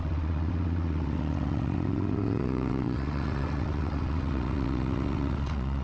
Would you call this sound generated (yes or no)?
yes